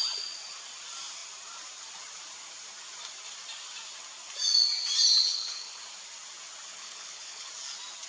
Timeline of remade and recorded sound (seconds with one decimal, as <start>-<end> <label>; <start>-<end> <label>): 0.0-5.3 recorded; 5.3-5.8 remade; 5.8-6.7 recorded; 6.7-7.5 remade; 7.5-8.1 recorded